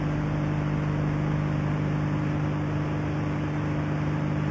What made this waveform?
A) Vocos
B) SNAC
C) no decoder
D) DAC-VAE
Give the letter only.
C